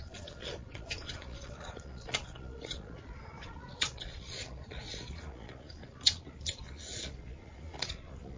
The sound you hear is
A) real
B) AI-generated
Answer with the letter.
B